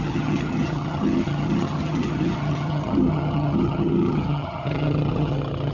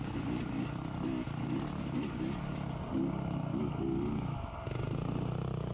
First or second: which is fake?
first